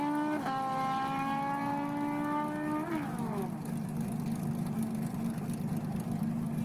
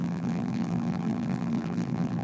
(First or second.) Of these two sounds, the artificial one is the second